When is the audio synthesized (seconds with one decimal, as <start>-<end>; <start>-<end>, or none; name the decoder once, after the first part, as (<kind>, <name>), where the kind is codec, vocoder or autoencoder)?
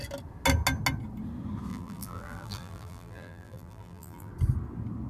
1.7-4.3 (vocoder, BigVGAN v2)